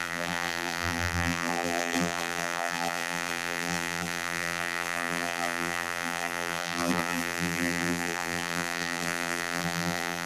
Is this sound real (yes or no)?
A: no